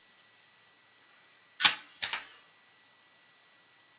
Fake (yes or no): no